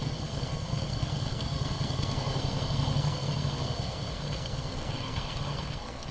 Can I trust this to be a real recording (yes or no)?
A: no